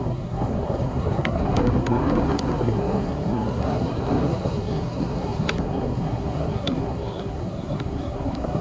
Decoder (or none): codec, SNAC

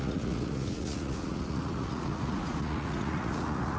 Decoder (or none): vocoder, Vocos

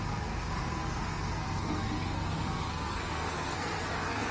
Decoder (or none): codec, SNAC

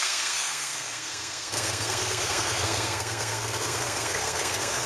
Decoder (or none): codec, SNAC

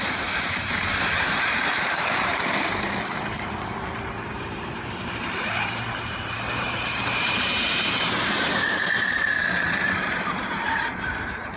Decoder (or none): vocoder, BigVGAN v2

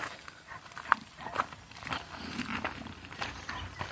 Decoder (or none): vocoder, BigVGAN v2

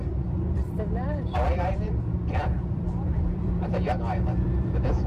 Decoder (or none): vocoder, BigVGAN v2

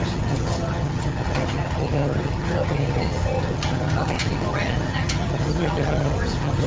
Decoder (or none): vocoder, HiFi-GAN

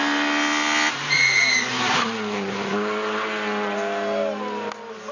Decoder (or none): none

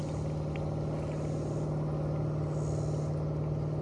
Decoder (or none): none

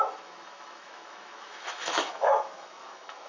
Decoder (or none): autoencoder, DAC-VAE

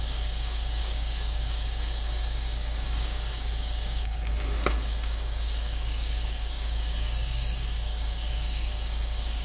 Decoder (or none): codec, DAC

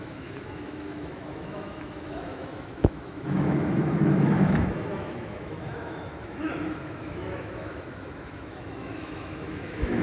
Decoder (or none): autoencoder, DAC-VAE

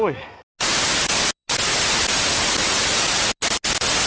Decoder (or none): none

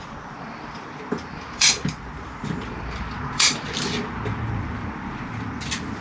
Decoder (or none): vocoder, BigVGAN v2